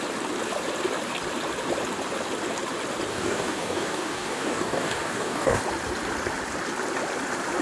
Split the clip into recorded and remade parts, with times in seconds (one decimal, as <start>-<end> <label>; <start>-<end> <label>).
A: 0.0-3.1 recorded; 3.1-5.6 remade; 5.6-7.6 recorded